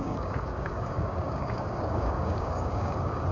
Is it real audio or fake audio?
fake